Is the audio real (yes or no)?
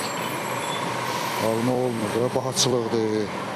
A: no